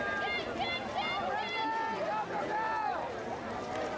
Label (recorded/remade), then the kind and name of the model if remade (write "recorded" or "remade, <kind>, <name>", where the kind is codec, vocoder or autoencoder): recorded